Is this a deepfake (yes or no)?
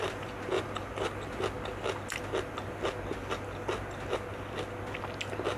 no